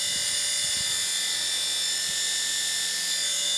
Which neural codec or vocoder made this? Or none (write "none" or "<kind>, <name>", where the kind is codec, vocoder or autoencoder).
none